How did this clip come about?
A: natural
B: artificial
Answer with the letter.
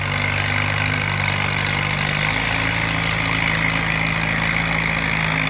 A